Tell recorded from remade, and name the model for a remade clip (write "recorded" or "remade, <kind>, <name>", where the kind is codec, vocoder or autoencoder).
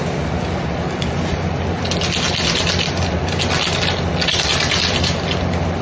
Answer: recorded